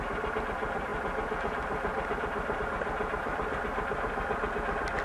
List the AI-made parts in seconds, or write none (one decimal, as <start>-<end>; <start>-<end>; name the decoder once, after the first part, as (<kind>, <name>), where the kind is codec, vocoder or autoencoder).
none